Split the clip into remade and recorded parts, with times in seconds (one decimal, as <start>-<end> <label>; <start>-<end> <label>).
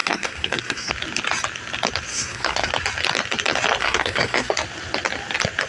0.0-0.9 remade; 0.9-2.1 recorded; 2.1-2.7 remade; 2.7-3.8 recorded; 3.8-4.5 remade; 4.5-5.7 recorded